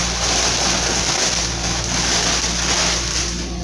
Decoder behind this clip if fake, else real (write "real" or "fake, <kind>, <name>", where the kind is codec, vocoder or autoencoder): real